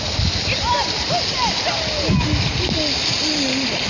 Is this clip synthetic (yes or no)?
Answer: no